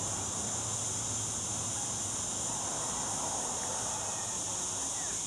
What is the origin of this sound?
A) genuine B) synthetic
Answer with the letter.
A